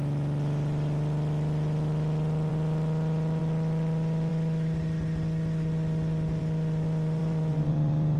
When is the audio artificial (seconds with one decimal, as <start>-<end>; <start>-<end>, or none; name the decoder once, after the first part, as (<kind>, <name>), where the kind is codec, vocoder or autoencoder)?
7.2-8.2 (vocoder, BigVGAN v2)

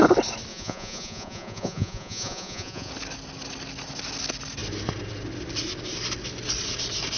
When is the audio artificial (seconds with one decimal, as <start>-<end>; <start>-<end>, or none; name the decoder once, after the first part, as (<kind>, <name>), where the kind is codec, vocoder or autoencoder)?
0.5-2.9 (vocoder, Vocos)

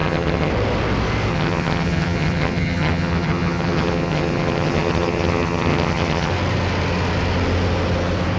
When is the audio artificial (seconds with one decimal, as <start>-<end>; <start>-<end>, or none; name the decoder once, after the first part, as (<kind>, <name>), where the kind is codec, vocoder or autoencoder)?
0.0-0.5 (vocoder, HiFi-GAN); 1.3-6.3